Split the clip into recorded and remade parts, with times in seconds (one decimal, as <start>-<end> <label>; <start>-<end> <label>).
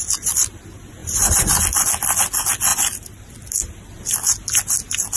0.0-1.0 recorded; 1.0-1.6 remade; 1.6-5.2 recorded